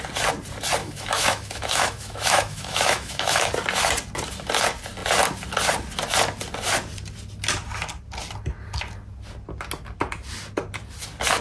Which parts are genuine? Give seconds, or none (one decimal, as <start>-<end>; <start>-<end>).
0.0-0.8; 3.5-11.4